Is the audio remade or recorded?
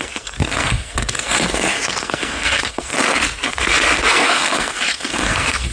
remade